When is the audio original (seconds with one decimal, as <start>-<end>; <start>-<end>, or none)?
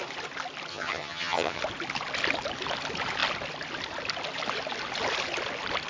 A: 0.0-0.7; 1.6-5.9